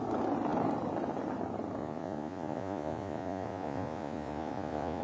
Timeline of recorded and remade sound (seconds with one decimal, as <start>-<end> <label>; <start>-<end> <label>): 0.0-1.8 recorded; 1.8-5.0 remade